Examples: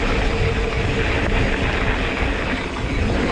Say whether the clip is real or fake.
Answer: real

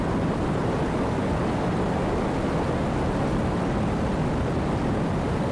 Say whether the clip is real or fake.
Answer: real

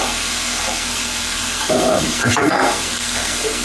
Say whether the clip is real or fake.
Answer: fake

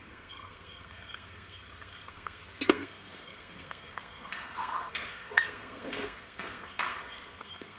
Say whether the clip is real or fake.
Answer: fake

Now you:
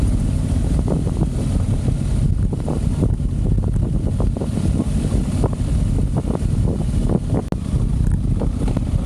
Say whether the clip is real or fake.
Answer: real